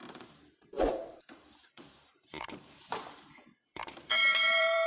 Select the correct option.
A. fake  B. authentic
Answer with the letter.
A